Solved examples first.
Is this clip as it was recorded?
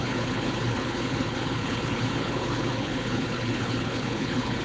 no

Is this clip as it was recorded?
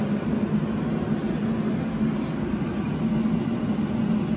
yes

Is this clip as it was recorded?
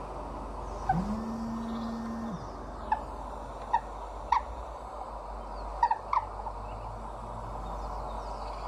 yes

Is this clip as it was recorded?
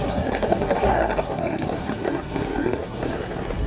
no